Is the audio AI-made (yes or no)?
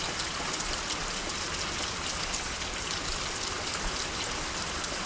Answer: no